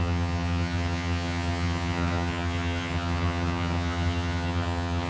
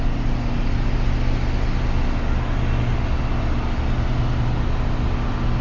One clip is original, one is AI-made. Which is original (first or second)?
second